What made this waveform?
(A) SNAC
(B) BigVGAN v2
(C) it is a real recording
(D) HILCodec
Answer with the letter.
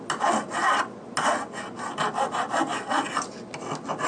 C